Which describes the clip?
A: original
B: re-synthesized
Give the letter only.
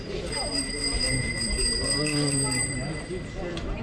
B